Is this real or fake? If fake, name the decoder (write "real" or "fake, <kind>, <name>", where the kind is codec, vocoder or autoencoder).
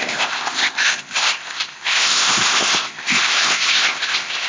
fake, codec, ZipCodec